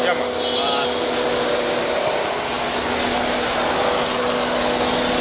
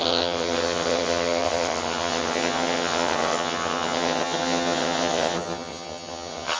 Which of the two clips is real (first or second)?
first